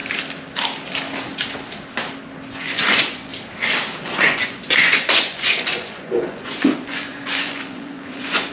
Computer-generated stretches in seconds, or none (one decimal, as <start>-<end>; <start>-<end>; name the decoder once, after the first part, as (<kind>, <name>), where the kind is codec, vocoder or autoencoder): 2.5-3.3 (vocoder, Vocos); 4.0-8.5